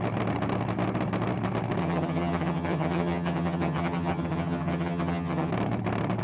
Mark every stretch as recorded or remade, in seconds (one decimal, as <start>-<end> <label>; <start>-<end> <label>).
0.0-1.8 recorded; 1.8-5.5 remade; 5.5-6.2 recorded